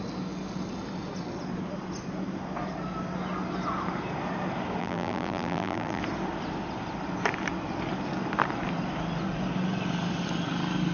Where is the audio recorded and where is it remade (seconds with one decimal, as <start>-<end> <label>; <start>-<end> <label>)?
0.0-4.8 recorded; 4.8-6.0 remade; 6.0-10.9 recorded